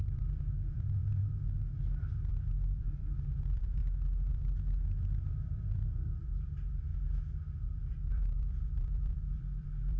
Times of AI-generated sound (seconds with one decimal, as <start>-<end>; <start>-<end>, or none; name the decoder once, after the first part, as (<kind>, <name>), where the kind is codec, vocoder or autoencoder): 0.0-1.2 (vocoder, BigVGAN v2); 2.3-3.8; 4.3-10.0